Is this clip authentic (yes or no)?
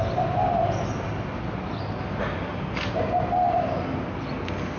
yes